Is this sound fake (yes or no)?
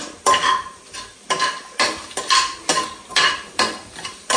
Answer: no